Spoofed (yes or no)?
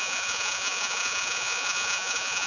yes